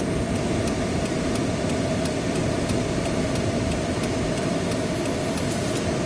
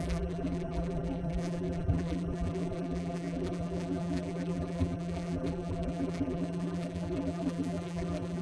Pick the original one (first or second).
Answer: first